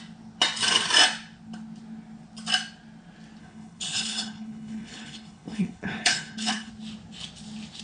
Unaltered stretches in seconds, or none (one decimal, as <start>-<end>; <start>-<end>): 0.0-3.4; 6.7-7.8